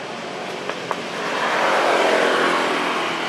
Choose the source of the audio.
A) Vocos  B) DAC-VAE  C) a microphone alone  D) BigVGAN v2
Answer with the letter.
D